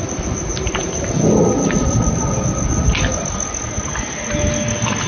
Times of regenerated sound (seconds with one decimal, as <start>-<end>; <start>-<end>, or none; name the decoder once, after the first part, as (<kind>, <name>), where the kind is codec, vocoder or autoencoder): none